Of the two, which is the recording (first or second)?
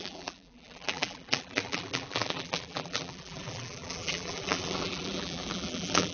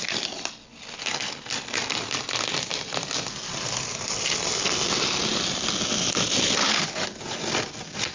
second